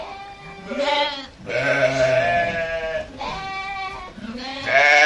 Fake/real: real